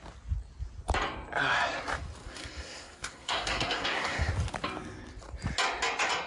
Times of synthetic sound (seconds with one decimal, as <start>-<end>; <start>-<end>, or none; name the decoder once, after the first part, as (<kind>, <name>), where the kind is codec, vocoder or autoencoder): 2.2-4.3 (codec, SNAC)